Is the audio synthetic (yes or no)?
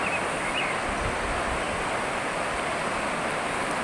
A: no